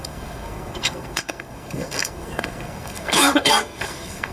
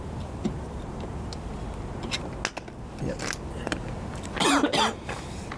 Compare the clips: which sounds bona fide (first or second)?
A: second